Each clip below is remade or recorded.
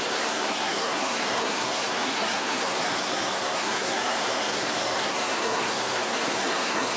remade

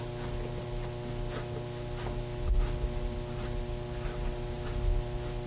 recorded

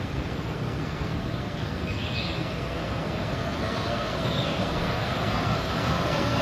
remade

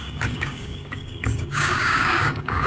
remade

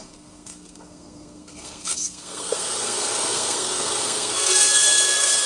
remade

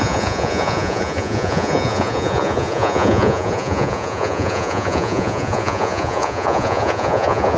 remade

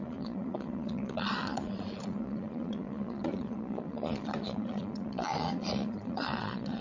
remade